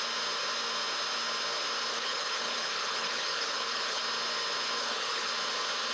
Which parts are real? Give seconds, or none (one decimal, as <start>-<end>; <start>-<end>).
0.0-1.9; 4.0-4.8; 5.3-5.9